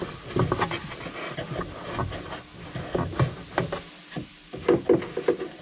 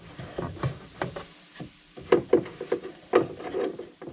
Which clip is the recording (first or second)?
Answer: first